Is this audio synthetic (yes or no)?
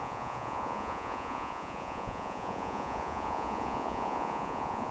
yes